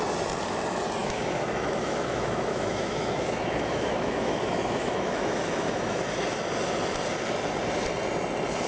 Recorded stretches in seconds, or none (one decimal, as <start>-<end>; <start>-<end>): 0.0-1.0; 6.0-8.7